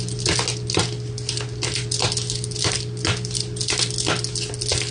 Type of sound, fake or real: real